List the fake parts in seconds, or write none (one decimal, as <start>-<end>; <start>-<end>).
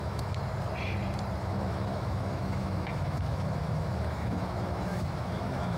0.0-0.4; 1.4-5.8